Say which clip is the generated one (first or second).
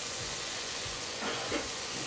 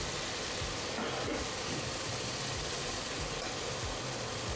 first